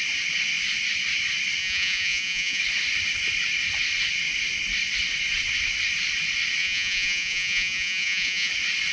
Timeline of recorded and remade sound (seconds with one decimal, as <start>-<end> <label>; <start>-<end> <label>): 0.0-1.6 recorded; 1.6-2.6 remade; 2.6-6.6 recorded; 6.6-8.5 remade; 8.5-8.9 recorded